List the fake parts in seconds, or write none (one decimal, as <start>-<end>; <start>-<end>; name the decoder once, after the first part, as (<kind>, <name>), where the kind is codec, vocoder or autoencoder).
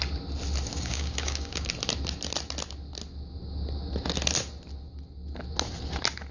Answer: 0.7-1.7 (codec, DAC)